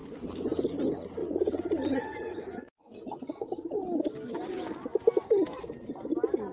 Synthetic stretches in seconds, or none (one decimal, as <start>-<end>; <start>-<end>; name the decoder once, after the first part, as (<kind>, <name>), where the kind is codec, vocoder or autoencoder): 1.2-3.8 (vocoder, Vocos)